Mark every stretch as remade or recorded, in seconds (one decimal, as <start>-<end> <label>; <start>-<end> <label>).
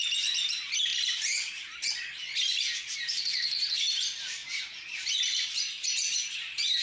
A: 0.0-4.4 remade; 4.4-5.2 recorded; 5.2-6.8 remade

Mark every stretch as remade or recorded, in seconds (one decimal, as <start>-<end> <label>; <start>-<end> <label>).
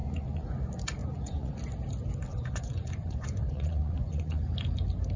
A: 0.0-0.5 remade; 0.5-1.0 recorded; 1.0-1.5 remade; 1.5-2.3 recorded; 2.3-4.4 remade; 4.4-5.2 recorded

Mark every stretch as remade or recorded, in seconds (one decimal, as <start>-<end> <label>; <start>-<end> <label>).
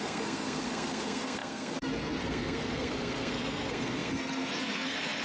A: 0.0-5.2 remade